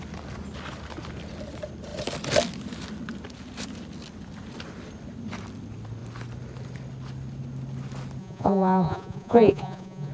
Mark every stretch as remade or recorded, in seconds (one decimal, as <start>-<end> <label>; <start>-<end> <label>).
0.0-8.2 recorded; 8.2-10.1 remade